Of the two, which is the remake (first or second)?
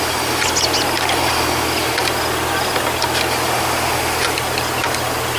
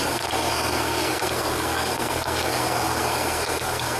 second